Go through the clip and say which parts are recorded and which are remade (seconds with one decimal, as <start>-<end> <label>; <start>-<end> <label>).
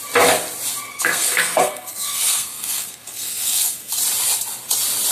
0.0-0.9 recorded; 0.9-4.0 remade; 4.0-5.1 recorded